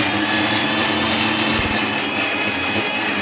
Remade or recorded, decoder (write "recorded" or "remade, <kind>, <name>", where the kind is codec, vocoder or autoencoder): recorded